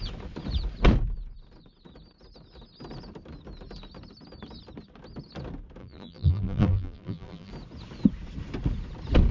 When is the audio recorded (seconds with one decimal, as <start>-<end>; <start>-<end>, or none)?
0.0-5.8; 7.5-9.3